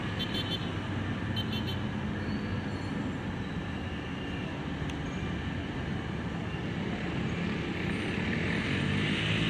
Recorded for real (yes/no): yes